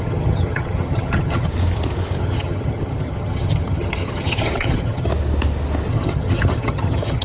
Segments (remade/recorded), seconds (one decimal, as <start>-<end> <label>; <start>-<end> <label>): 0.0-1.5 remade; 1.5-2.2 recorded; 2.2-5.1 remade; 5.1-5.9 recorded; 5.9-7.2 remade